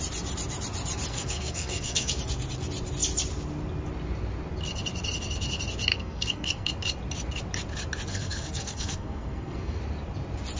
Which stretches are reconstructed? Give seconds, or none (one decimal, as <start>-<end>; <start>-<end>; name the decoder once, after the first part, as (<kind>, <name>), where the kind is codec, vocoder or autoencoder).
1.1-2.1 (codec, SNAC); 5.9-6.7; 8.1-9.8